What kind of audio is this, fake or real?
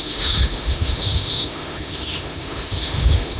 fake